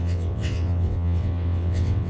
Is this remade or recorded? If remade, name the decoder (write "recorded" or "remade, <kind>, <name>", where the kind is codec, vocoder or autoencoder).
remade, vocoder, WaveNeXt